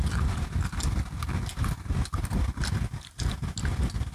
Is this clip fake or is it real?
real